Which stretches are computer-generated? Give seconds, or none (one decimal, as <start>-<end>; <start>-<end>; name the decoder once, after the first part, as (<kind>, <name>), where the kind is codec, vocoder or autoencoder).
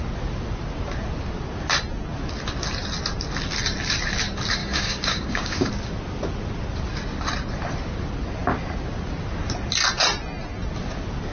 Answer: 4.6-5.7 (codec, DAC)